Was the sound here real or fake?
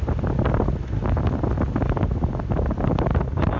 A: real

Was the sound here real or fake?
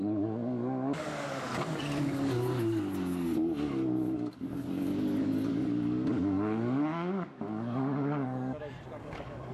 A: fake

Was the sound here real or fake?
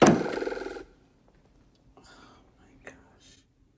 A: real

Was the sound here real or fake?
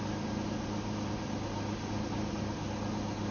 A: real